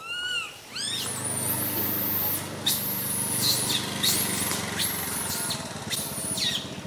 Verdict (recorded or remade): recorded